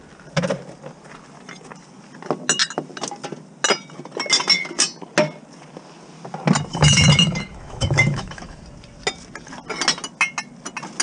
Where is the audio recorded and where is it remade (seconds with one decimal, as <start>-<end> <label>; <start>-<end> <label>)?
0.0-6.7 recorded; 6.7-8.6 remade; 8.6-11.0 recorded